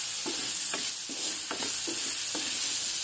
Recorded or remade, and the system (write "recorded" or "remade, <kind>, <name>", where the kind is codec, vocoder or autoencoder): recorded